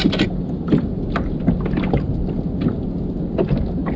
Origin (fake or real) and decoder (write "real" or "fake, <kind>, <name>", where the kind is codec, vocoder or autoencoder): real